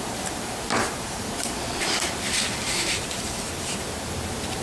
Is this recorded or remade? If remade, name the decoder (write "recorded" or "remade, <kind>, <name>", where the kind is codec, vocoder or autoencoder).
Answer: remade, vocoder, BigVGAN v2